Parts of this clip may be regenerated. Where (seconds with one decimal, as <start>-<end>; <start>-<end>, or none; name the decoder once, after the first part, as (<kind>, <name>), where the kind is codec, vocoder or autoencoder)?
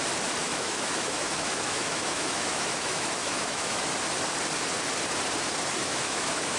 0.4-3.9 (autoencoder, DAC-VAE); 5.8-6.6